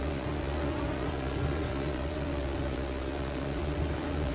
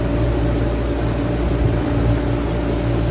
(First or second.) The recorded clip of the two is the second